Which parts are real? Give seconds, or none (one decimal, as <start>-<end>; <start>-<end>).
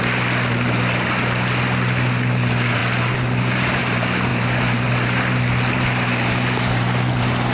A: 0.0-7.5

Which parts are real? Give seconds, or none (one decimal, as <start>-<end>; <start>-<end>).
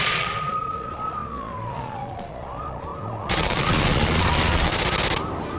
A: 4.7-5.6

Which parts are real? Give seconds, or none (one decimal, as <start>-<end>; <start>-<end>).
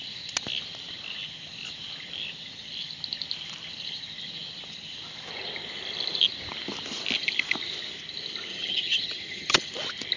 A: 0.0-8.5; 9.7-10.2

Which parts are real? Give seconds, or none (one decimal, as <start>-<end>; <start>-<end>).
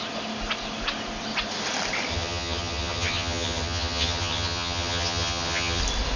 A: 0.0-2.1; 5.8-6.2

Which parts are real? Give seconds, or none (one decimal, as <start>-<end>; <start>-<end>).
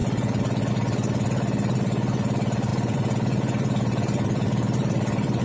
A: 0.0-2.7